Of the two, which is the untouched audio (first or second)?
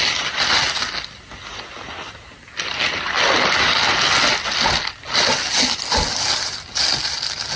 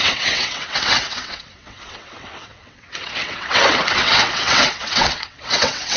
first